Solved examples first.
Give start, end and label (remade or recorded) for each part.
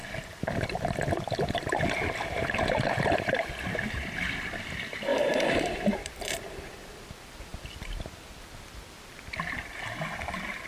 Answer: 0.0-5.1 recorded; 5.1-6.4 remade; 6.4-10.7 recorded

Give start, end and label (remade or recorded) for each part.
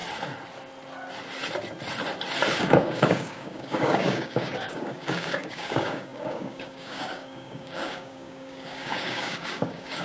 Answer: 0.0-2.6 recorded; 2.6-10.0 remade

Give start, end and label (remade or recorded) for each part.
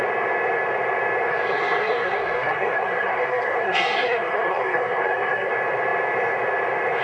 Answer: 0.0-1.3 recorded; 1.3-5.5 remade; 5.5-7.0 recorded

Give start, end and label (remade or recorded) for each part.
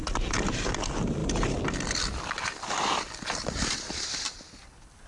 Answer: 0.0-1.2 recorded; 1.2-4.3 remade; 4.3-5.1 recorded